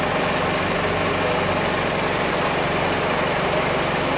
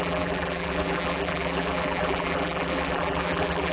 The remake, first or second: second